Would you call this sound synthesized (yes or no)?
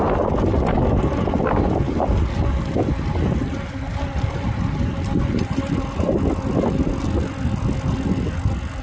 no